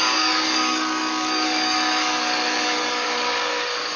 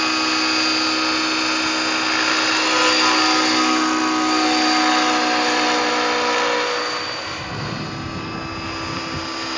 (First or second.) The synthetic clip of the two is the first